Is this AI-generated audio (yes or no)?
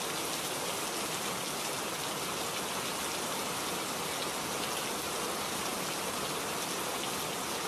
no